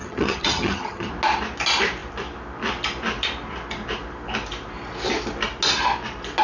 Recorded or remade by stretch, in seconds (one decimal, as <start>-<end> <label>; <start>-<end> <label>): 0.0-1.1 remade; 1.1-6.4 recorded